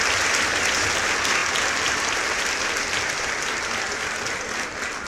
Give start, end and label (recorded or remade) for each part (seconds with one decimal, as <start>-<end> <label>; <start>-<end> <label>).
0.0-1.4 recorded; 1.4-3.4 remade; 3.4-5.1 recorded